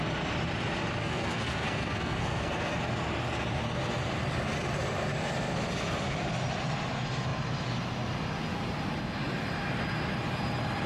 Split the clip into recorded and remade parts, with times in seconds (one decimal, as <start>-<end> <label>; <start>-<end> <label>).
0.0-1.0 recorded; 1.0-2.8 remade; 2.8-10.9 recorded